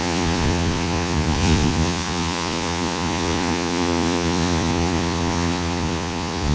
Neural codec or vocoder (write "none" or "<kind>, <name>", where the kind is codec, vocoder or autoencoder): vocoder, Vocos